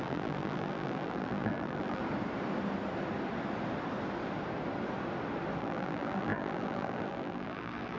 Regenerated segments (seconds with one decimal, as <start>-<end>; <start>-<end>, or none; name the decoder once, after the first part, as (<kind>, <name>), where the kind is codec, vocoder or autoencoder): 0.0-2.0 (vocoder, BigVGAN v2); 5.6-8.0